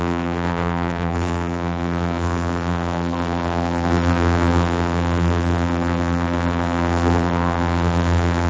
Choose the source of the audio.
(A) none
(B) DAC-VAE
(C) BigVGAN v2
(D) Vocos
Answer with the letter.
C